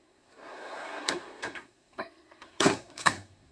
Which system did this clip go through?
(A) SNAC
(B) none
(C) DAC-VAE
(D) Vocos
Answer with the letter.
A